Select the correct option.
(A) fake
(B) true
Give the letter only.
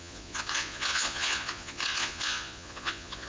A